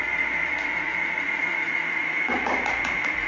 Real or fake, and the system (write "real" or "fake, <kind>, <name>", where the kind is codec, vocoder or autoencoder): fake, vocoder, Vocos